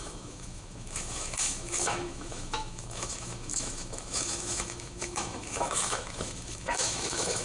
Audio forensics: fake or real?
fake